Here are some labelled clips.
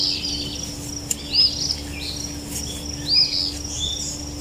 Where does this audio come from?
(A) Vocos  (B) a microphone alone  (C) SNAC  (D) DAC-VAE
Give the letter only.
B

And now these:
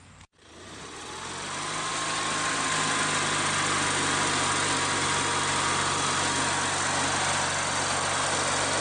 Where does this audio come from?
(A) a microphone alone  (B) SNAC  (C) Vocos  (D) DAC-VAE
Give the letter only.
A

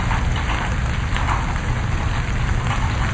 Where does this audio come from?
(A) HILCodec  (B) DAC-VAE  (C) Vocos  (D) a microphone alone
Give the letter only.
D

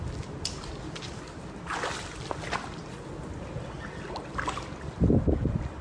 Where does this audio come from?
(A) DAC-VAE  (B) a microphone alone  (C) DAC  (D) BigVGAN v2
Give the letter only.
B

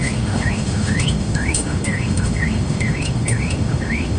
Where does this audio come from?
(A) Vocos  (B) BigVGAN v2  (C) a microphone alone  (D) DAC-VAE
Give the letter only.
D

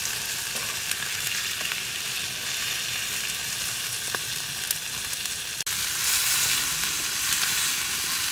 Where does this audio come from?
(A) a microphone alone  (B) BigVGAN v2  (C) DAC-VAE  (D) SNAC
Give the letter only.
A